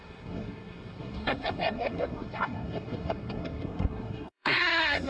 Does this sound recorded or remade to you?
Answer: remade